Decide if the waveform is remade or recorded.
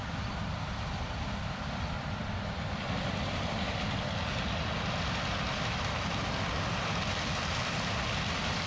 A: recorded